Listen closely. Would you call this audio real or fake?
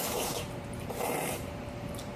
fake